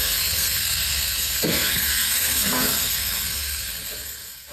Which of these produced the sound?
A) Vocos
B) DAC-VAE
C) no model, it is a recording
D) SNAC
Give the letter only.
D